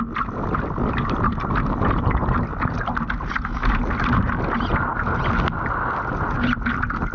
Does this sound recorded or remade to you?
recorded